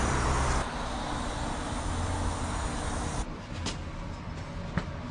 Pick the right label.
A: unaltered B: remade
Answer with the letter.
A